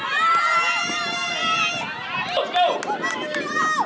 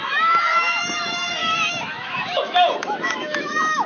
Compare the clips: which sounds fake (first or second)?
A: second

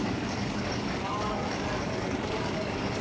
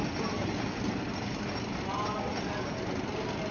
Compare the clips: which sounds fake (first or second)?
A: first